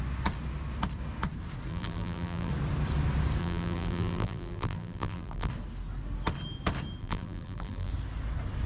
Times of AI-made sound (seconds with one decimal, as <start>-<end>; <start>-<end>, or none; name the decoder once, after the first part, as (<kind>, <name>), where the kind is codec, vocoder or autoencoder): 1.7-2.5 (vocoder, BigVGAN v2); 3.4-5.5; 7.0-7.9